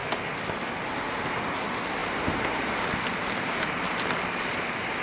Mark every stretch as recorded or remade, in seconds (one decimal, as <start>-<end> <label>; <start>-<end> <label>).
0.0-2.0 recorded; 2.0-2.9 remade; 2.9-5.0 recorded